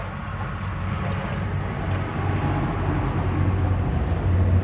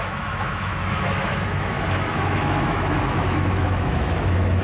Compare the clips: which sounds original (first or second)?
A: first